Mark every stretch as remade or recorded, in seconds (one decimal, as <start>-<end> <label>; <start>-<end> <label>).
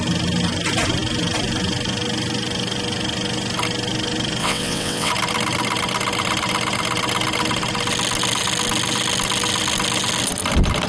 0.0-4.4 recorded; 4.4-5.1 remade; 5.1-10.9 recorded